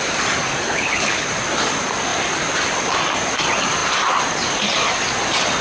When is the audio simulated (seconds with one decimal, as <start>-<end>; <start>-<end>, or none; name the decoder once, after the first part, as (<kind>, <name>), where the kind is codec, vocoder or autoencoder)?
0.7-1.3 (codec, HILCodec)